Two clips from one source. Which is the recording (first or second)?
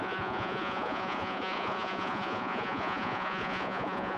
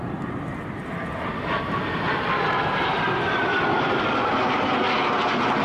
second